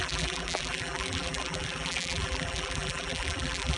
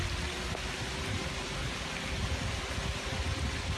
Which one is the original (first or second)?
second